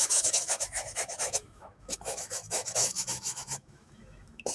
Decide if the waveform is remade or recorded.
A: remade